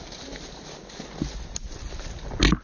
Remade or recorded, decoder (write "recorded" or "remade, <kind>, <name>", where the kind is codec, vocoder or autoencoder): recorded